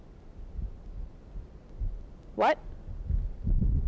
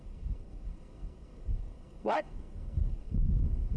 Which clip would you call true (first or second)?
first